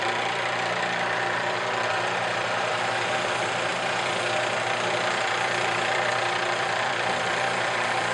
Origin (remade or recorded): remade